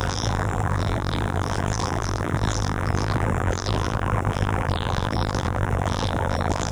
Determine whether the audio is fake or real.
fake